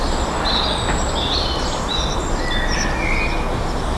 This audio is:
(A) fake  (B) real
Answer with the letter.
B